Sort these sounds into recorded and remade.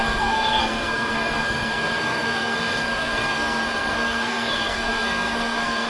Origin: remade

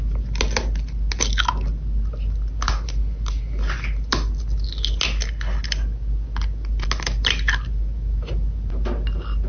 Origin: recorded